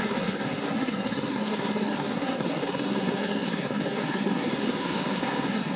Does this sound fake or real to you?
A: fake